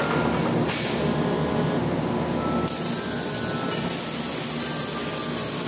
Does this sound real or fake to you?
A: real